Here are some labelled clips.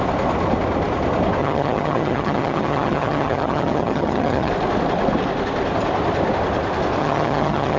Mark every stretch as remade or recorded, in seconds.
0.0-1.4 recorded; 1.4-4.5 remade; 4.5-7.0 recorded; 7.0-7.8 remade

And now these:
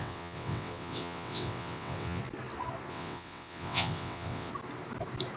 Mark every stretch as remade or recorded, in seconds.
0.0-2.2 remade; 2.2-2.9 recorded; 2.9-4.5 remade; 4.5-5.4 recorded